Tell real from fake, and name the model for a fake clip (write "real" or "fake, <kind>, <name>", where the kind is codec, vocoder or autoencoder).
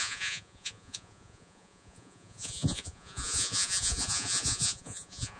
fake, vocoder, Vocos